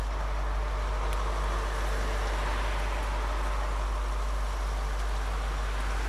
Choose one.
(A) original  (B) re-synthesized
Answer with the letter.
A